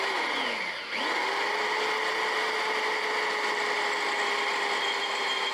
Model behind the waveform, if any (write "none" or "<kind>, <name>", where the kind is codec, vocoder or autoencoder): none